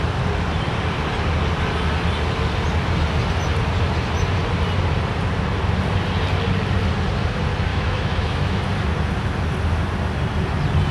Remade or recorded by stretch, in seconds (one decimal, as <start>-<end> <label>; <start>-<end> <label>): 0.0-7.7 recorded; 7.7-8.6 remade; 8.6-10.9 recorded